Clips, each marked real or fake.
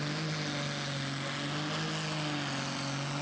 real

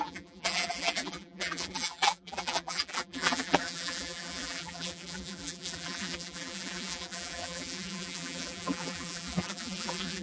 fake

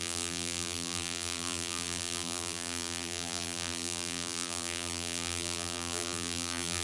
fake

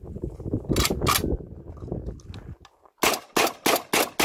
real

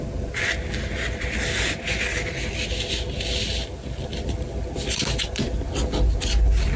real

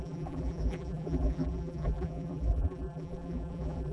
fake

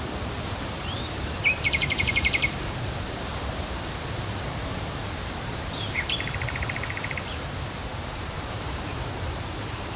fake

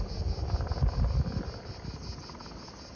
real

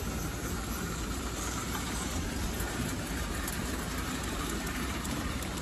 fake